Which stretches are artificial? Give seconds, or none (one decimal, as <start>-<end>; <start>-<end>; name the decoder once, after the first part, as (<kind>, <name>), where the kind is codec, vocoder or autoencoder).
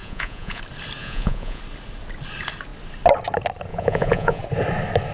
0.0-0.6 (vocoder, Vocos); 1.0-1.6; 3.7-4.4